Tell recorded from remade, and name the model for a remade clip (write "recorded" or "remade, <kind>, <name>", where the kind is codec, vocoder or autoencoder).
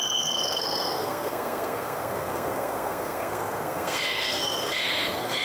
remade, codec, SNAC